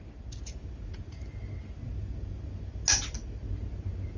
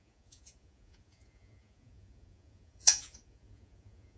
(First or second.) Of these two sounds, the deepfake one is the second